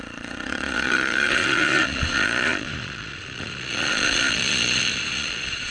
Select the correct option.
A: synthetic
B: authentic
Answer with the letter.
A